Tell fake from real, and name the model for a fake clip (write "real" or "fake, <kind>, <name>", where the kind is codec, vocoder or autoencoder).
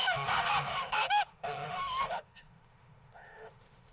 fake, autoencoder, DAC-VAE